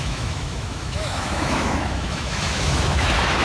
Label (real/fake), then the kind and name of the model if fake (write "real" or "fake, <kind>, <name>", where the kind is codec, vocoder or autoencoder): fake, autoencoder, DAC-VAE